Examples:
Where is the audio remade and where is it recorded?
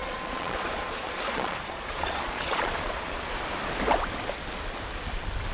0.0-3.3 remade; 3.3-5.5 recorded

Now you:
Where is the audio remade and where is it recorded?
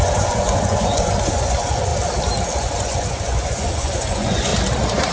0.0-1.9 remade; 1.9-2.6 recorded; 2.6-4.5 remade; 4.5-5.1 recorded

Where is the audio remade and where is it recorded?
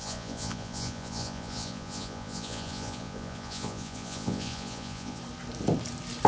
0.0-5.2 remade; 5.2-6.3 recorded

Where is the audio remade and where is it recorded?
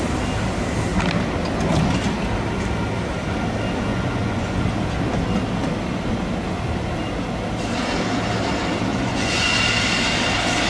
0.0-3.9 recorded; 3.9-4.6 remade; 4.6-8.9 recorded; 8.9-9.6 remade; 9.6-10.7 recorded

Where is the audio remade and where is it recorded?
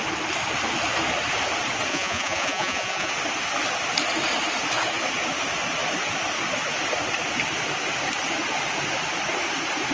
0.0-1.9 recorded; 1.9-3.1 remade; 3.1-9.9 recorded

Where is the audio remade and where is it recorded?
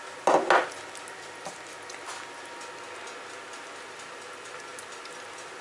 0.0-5.6 recorded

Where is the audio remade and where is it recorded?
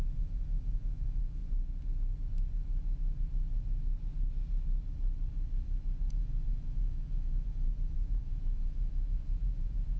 0.0-1.4 remade; 1.4-6.1 recorded; 6.1-10.0 remade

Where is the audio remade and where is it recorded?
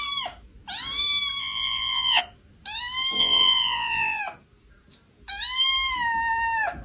0.0-1.4 recorded; 1.4-2.2 remade; 2.2-3.2 recorded; 3.2-4.2 remade; 4.2-6.8 recorded